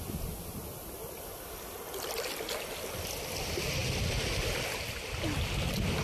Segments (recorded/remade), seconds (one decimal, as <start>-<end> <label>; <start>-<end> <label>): 0.0-6.0 recorded